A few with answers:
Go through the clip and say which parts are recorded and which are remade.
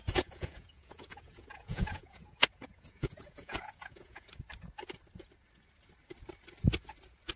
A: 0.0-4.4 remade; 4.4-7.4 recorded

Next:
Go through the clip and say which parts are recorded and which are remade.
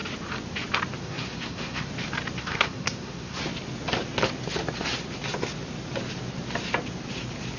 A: 0.0-1.0 recorded; 1.0-1.9 remade; 1.9-2.4 recorded; 2.4-3.4 remade; 3.4-7.6 recorded